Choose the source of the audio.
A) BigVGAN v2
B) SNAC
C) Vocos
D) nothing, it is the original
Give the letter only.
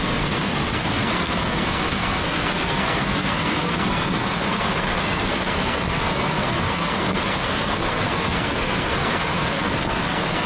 B